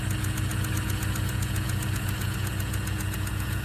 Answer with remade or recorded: remade